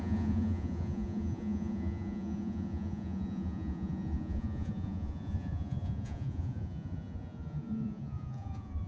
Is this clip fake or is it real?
fake